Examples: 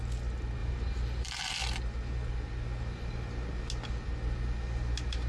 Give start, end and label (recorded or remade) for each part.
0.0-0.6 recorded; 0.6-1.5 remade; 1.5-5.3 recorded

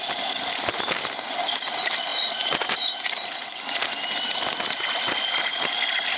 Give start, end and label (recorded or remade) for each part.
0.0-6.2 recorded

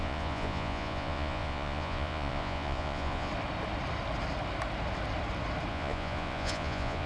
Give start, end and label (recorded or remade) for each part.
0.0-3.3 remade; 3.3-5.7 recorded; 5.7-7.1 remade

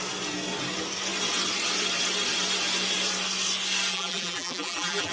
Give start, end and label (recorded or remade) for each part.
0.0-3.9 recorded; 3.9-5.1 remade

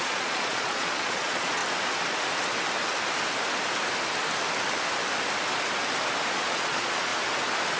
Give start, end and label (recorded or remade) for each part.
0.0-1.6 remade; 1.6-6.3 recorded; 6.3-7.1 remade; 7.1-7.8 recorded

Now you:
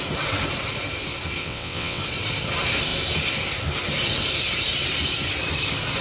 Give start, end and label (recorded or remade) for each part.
0.0-1.4 recorded; 1.4-2.0 remade; 2.0-6.0 recorded

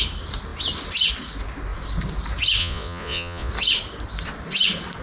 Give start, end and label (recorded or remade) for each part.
0.0-2.6 recorded; 2.6-3.5 remade; 3.5-5.0 recorded